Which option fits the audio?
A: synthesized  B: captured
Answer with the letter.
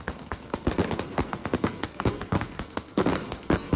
A